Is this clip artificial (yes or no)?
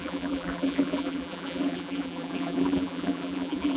yes